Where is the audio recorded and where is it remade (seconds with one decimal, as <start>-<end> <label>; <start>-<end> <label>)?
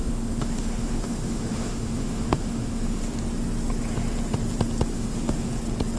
0.0-3.1 remade; 3.1-4.9 recorded; 4.9-5.5 remade; 5.5-6.0 recorded